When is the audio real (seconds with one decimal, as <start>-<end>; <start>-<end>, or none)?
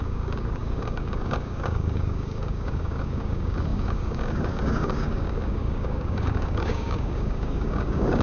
none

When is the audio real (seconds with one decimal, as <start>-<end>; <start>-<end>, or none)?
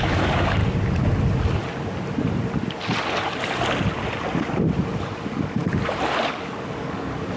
0.6-5.0; 5.6-6.2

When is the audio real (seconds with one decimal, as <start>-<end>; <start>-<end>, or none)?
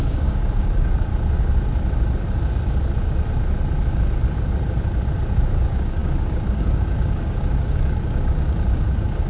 1.1-5.4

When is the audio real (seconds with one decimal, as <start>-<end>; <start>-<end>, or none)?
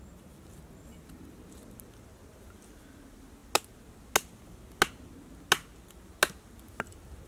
0.0-7.3